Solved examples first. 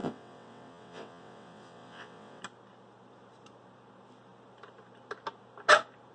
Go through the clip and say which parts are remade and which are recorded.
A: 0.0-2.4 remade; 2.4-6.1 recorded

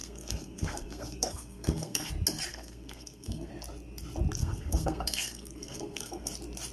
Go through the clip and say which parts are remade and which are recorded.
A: 0.0-2.1 remade; 2.1-2.5 recorded; 2.5-3.5 remade; 3.5-4.4 recorded; 4.4-6.3 remade; 6.3-6.7 recorded

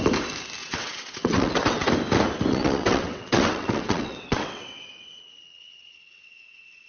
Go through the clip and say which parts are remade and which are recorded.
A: 0.0-0.6 recorded; 0.6-1.9 remade; 1.9-2.5 recorded; 2.5-6.9 remade